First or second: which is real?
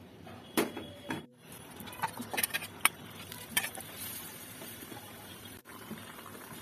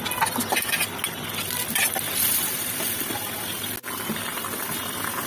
second